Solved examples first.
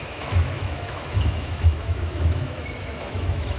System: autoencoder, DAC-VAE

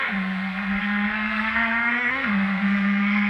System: codec, SNAC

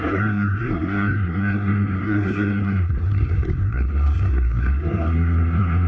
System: codec, SNAC